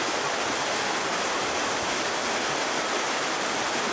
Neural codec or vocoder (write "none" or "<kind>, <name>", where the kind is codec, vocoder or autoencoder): none